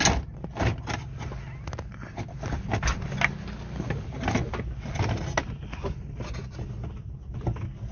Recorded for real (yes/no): yes